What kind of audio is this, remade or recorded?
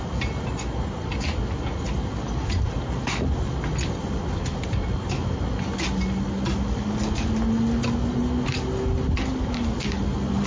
recorded